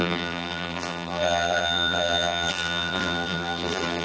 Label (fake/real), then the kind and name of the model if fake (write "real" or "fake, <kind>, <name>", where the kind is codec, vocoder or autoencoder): fake, vocoder, BigVGAN v2